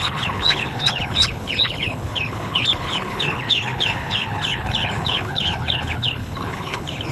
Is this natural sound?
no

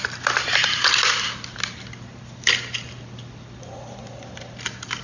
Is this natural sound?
yes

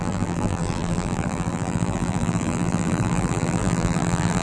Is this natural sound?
no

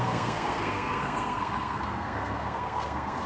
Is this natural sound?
no